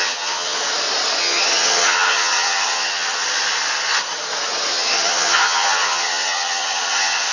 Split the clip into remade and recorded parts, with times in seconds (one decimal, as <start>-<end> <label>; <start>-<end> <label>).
0.0-0.6 remade; 0.6-1.2 recorded; 1.2-3.2 remade; 3.2-4.7 recorded; 4.7-7.3 remade